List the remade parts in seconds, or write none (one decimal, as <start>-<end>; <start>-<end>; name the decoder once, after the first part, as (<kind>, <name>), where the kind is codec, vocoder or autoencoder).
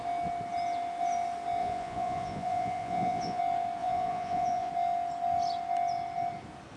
1.6-3.4 (vocoder, Vocos); 3.8-4.7